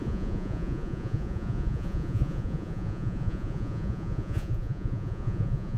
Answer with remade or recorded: remade